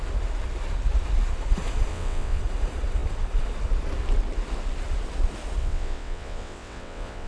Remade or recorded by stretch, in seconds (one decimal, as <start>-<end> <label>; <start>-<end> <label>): 0.0-1.9 recorded; 1.9-2.4 remade; 2.4-5.6 recorded; 5.6-7.3 remade